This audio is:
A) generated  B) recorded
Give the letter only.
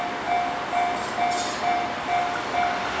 B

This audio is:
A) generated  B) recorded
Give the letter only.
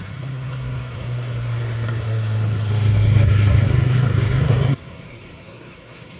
A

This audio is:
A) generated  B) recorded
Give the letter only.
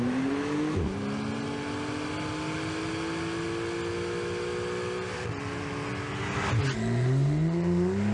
B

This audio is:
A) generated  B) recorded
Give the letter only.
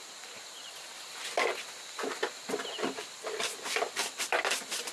B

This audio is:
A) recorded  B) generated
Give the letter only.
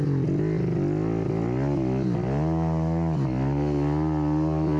A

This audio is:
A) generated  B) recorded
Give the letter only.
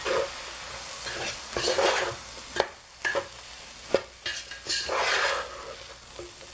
B